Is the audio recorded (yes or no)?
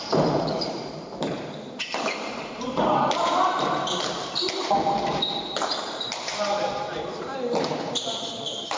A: no